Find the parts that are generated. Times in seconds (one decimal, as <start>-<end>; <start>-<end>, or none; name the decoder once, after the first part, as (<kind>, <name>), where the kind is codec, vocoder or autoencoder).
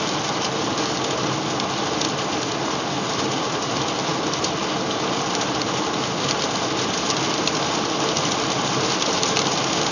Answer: none